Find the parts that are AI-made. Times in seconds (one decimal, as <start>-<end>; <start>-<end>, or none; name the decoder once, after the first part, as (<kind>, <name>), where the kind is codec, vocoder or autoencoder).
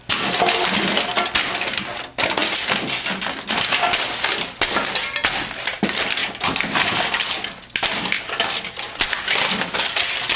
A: none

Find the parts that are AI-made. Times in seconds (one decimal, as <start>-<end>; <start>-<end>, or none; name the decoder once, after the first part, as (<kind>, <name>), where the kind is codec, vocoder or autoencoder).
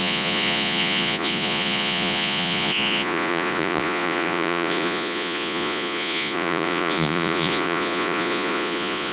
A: 0.0-9.1 (vocoder, Vocos)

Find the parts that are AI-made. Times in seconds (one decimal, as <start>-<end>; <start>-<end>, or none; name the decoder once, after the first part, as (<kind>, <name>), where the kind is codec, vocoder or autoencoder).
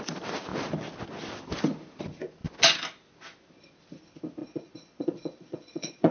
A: 4.4-6.1 (vocoder, Vocos)